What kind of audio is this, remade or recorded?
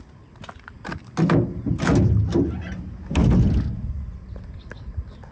recorded